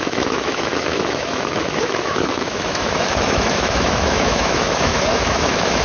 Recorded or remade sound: remade